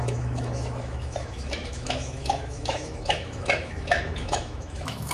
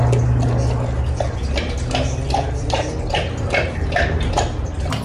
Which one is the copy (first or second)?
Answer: first